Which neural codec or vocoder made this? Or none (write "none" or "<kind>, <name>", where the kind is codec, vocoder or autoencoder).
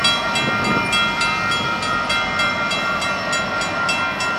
none